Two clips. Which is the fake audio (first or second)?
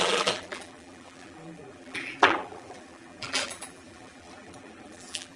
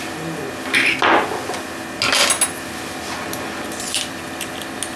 first